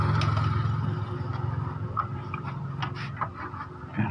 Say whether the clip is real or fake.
real